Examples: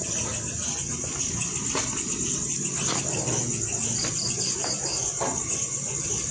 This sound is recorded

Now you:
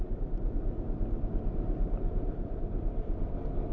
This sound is recorded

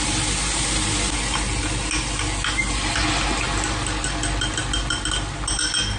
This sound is recorded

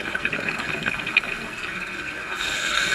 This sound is remade